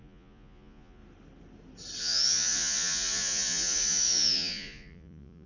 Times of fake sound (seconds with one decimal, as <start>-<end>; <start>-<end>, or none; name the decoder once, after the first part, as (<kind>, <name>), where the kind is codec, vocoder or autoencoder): 0.0-1.0 (vocoder, Vocos); 2.0-5.5